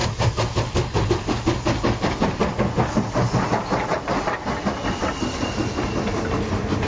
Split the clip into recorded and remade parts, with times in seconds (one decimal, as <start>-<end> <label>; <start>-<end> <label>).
0.0-6.9 recorded